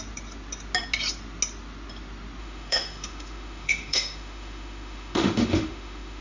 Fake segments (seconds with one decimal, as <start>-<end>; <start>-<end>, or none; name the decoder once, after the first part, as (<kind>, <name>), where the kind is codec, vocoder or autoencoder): 2.4-6.2 (autoencoder, DAC-VAE)